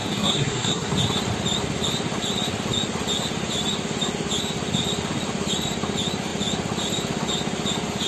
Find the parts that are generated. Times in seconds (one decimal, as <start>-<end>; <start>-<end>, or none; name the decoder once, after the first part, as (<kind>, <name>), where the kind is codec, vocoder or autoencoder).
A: 0.0-0.9 (codec, SNAC)